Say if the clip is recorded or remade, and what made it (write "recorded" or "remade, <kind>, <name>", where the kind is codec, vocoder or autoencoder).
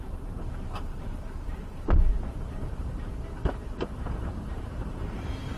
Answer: remade, vocoder, BigVGAN v2